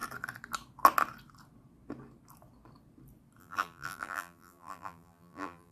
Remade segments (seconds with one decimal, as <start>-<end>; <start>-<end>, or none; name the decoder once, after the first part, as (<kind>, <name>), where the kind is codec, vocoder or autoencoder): 3.4-5.7 (vocoder, BigVGAN v2)